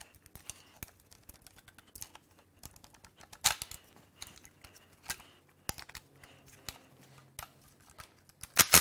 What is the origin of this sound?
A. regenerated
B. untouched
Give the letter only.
B